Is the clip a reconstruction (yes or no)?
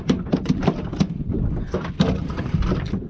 yes